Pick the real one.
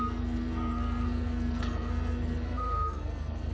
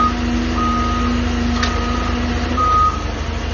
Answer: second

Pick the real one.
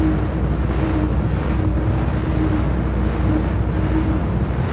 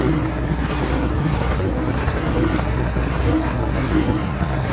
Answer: first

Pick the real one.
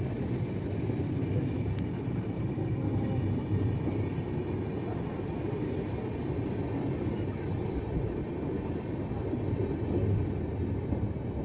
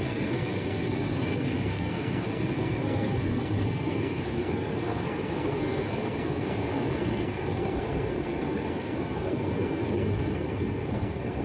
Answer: first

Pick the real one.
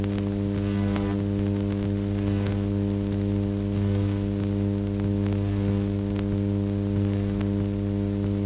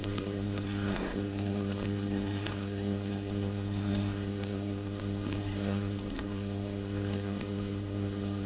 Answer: first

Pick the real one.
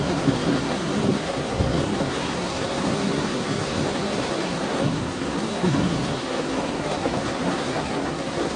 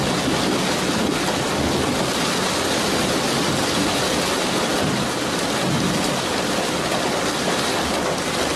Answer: second